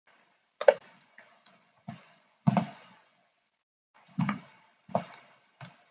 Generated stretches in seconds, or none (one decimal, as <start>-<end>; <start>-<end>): 0.9-4.4